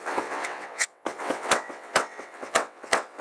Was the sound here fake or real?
fake